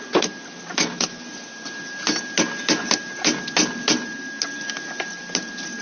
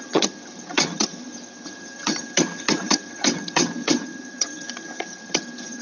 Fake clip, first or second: second